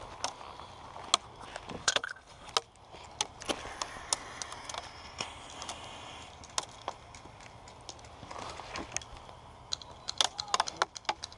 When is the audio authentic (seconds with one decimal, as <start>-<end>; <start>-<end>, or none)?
0.0-1.8; 2.5-11.4